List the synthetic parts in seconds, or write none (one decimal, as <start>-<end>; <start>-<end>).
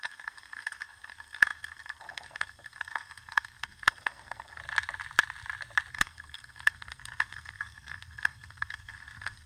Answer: 0.0-4.6; 5.9-9.5